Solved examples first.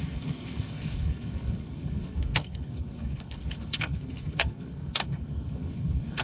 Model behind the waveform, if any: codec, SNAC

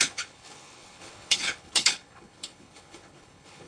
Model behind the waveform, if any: codec, HILCodec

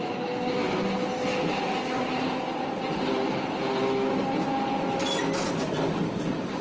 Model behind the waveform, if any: none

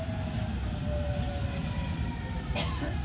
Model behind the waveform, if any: none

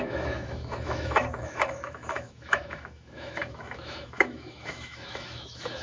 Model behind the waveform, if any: autoencoder, DAC-VAE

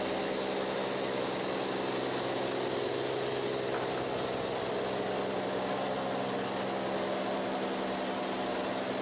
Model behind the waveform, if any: none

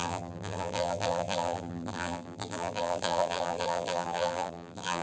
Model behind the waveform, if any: vocoder, BigVGAN v2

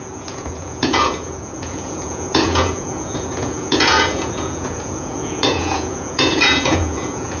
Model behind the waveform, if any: vocoder, Vocos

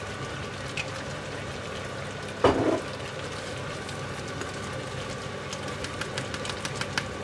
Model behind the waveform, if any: none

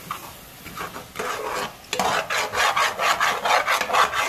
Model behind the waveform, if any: none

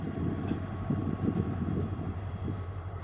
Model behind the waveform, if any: none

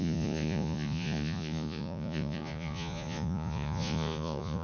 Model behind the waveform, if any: vocoder, Vocos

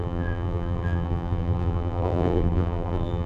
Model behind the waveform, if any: vocoder, BigVGAN v2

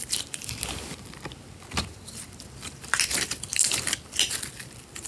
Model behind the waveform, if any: vocoder, BigVGAN v2